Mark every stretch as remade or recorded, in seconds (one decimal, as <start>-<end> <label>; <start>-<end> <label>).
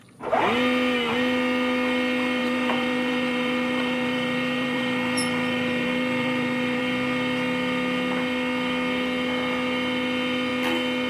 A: 0.0-2.4 recorded; 2.4-6.8 remade; 6.8-11.1 recorded